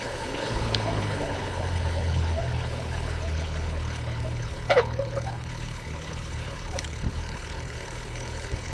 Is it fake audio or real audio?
fake